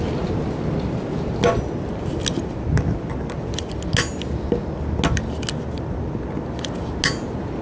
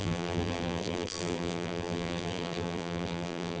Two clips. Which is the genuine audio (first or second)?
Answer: first